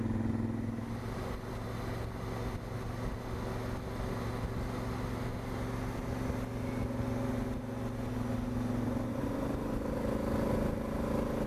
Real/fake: real